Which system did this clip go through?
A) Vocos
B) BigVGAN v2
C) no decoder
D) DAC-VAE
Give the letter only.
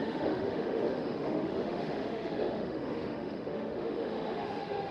D